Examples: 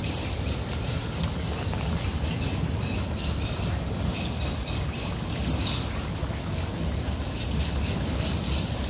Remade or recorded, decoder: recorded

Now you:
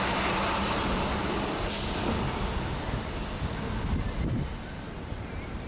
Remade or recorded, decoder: recorded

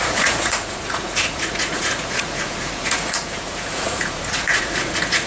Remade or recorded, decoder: remade, vocoder, Vocos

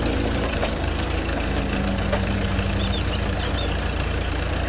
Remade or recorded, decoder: remade, vocoder, BigVGAN v2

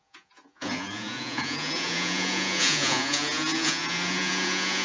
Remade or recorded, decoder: remade, vocoder, Vocos